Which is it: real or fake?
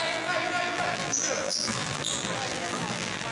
fake